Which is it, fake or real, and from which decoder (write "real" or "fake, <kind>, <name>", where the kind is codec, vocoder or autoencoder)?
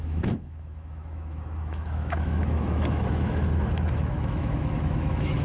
fake, autoencoder, DAC-VAE